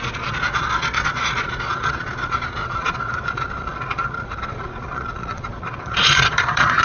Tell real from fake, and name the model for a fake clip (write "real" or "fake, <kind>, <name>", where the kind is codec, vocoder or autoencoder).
fake, vocoder, Vocos